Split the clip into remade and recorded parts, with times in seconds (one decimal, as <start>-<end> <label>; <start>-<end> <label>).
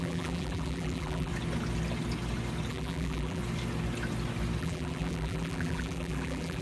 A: 0.0-1.3 remade; 1.3-2.7 recorded; 2.7-3.4 remade; 3.4-4.6 recorded; 4.6-6.6 remade